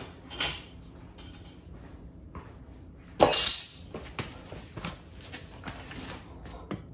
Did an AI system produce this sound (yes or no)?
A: no